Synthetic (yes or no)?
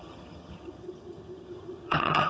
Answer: yes